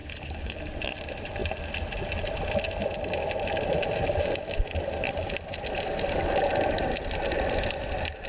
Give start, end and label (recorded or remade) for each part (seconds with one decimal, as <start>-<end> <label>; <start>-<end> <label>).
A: 0.0-0.6 remade; 0.6-8.3 recorded